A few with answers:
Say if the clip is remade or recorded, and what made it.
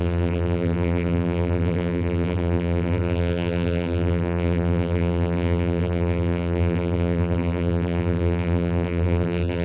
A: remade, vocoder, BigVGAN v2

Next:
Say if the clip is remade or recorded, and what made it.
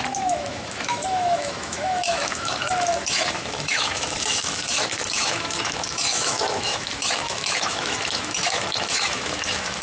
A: remade, autoencoder, DAC-VAE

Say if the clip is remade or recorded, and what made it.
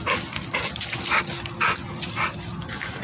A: recorded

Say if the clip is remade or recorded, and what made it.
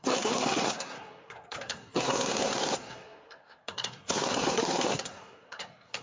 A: remade, codec, SNAC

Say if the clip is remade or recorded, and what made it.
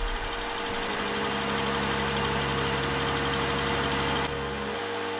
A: recorded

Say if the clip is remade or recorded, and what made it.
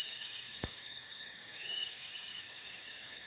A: remade, codec, DAC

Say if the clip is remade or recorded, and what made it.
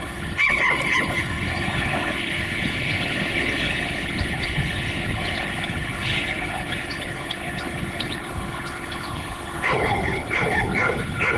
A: remade, codec, HILCodec